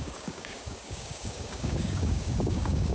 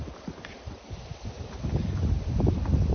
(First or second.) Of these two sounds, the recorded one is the second